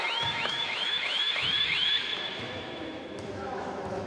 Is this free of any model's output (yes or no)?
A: no